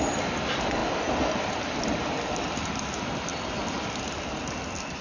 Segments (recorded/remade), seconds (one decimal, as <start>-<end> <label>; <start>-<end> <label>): 0.0-3.3 recorded; 3.3-5.0 remade

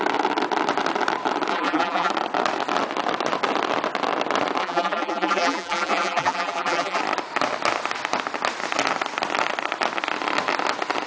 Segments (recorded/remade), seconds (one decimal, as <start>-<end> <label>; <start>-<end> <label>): 0.0-1.5 recorded; 1.5-2.1 remade; 2.1-4.6 recorded; 4.6-7.0 remade; 7.0-11.1 recorded

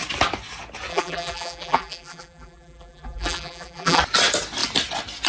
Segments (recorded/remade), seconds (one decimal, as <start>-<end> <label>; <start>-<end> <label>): 0.0-0.9 recorded; 0.9-4.0 remade; 4.0-5.3 recorded

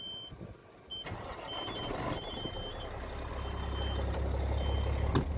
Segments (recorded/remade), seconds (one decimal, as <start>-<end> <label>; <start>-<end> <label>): 0.0-5.4 recorded

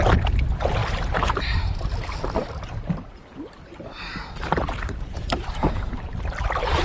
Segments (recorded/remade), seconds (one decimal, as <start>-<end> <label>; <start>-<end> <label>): 0.0-0.8 recorded; 0.8-1.9 remade; 1.9-2.4 recorded; 2.4-6.1 remade; 6.1-6.8 recorded

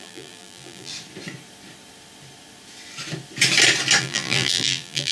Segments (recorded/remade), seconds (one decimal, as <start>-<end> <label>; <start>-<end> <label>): 0.0-0.9 remade; 0.9-4.0 recorded; 4.0-5.1 remade